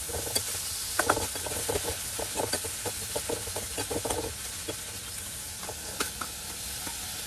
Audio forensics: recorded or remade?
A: recorded